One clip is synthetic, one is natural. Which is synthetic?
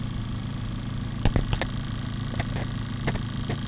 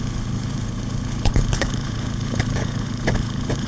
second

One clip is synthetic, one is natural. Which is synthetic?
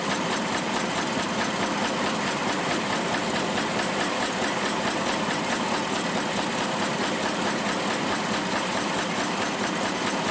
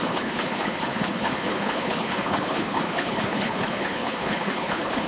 second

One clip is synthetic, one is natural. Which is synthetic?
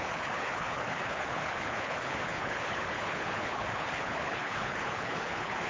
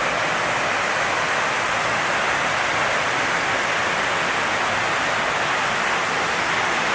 first